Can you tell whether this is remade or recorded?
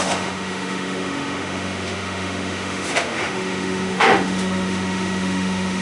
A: remade